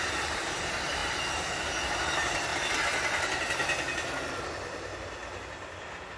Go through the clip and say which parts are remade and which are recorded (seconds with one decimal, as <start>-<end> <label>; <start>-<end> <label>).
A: 0.0-1.0 remade; 1.0-1.9 recorded; 1.9-2.5 remade; 2.5-4.2 recorded; 4.2-5.2 remade; 5.2-6.2 recorded